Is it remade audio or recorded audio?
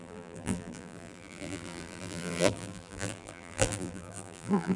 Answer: remade